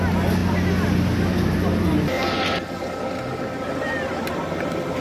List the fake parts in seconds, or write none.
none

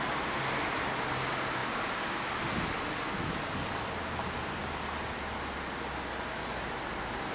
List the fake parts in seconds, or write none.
none